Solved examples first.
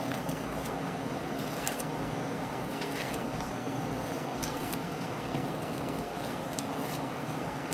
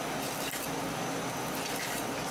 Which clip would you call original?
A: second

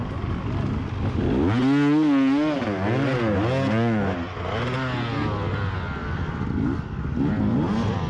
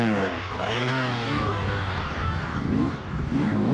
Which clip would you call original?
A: first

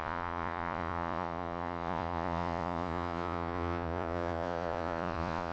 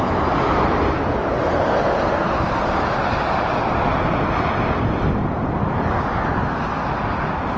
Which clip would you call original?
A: second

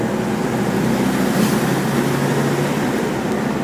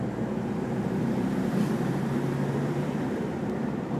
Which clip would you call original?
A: first